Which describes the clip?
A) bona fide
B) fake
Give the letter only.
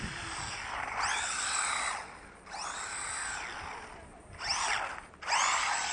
A